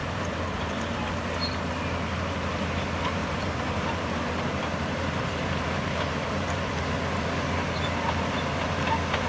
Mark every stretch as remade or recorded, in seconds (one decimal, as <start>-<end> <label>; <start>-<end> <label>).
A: 0.0-1.1 remade; 1.1-3.2 recorded; 3.2-6.9 remade; 6.9-9.3 recorded